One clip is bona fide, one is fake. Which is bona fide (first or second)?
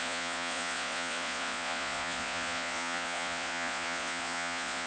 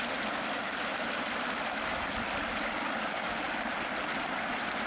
second